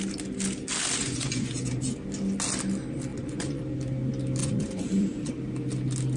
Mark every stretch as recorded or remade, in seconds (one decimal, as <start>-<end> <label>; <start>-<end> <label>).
0.0-1.0 recorded; 1.0-1.8 remade; 1.8-3.1 recorded; 3.1-3.6 remade; 3.6-4.4 recorded; 4.4-5.3 remade; 5.3-6.2 recorded